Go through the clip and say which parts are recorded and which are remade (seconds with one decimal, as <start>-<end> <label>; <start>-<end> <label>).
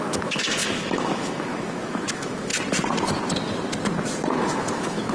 0.0-2.5 remade; 2.5-4.4 recorded; 4.4-5.1 remade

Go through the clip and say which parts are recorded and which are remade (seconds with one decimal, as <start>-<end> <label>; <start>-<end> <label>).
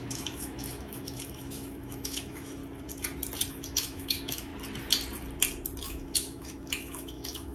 0.0-2.6 remade; 2.6-3.5 recorded; 3.5-4.5 remade; 4.5-5.8 recorded; 5.8-7.5 remade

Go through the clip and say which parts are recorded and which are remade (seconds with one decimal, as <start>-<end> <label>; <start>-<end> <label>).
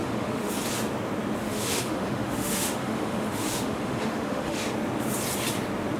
0.0-0.5 remade; 0.5-1.4 recorded; 1.4-4.6 remade; 4.6-6.0 recorded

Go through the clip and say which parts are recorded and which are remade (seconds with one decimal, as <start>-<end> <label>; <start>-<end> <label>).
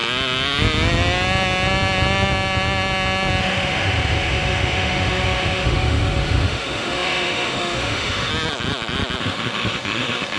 0.0-3.4 recorded; 3.4-8.3 remade; 8.3-9.2 recorded; 9.2-10.4 remade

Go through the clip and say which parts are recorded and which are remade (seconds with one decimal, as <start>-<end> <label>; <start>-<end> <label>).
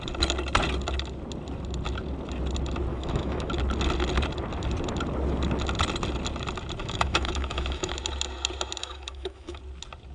0.0-2.9 recorded; 2.9-3.5 remade; 3.5-6.8 recorded; 6.8-7.9 remade; 7.9-8.8 recorded; 8.8-9.6 remade; 9.6-10.1 recorded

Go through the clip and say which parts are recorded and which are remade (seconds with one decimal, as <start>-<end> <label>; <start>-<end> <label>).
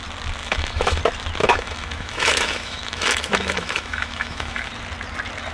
0.0-0.4 recorded; 0.4-1.0 remade; 1.0-1.4 recorded; 1.4-4.7 remade; 4.7-5.5 recorded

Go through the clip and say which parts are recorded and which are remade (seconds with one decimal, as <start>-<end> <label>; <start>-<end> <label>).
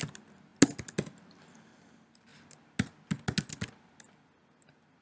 0.0-5.0 recorded